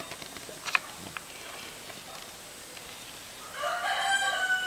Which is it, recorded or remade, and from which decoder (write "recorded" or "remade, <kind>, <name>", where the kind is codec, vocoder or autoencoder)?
recorded